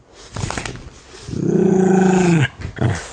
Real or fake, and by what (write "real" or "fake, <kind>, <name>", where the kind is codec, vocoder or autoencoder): real